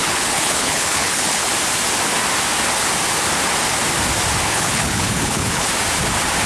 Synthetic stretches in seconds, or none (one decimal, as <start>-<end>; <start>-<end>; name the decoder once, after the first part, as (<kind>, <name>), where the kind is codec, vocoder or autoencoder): 0.0-1.5 (codec, HILCodec); 4.5-5.7